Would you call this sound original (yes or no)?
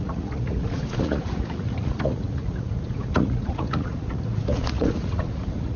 no